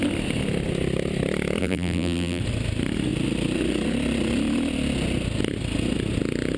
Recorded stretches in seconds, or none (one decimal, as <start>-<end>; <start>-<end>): 0.0-1.6; 2.4-6.6